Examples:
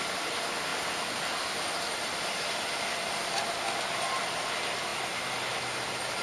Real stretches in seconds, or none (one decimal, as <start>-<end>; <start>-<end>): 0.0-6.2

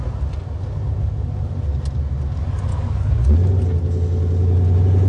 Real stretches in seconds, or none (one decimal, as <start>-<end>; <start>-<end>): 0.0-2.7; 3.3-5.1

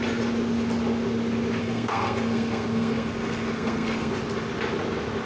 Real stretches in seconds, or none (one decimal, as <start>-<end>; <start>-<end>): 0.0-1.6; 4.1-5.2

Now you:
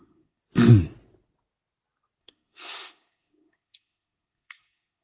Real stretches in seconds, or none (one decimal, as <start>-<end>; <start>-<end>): 0.4-2.2

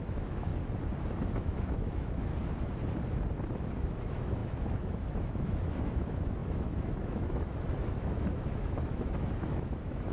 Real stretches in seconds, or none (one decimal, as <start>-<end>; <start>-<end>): 0.5-1.4; 2.3-3.7